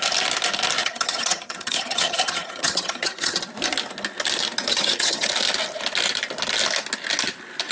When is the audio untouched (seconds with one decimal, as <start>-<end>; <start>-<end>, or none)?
0.0-0.8; 3.4-4.7; 5.3-7.7